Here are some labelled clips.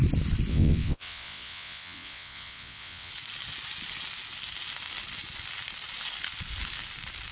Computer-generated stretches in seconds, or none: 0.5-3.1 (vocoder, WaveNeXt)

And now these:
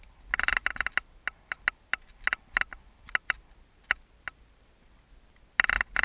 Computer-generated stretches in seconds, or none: none

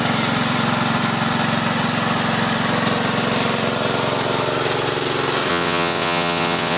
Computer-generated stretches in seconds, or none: 5.5-6.8 (vocoder, WaveNeXt)

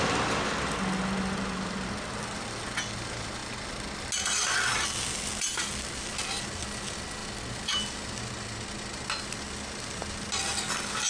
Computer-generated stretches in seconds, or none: none

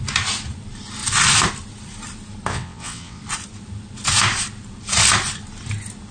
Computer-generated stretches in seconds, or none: 2.5-3.2 (vocoder, WaveNeXt)